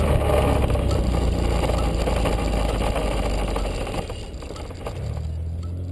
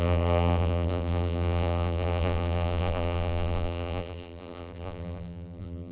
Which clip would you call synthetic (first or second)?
second